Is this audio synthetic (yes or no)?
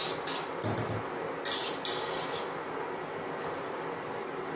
no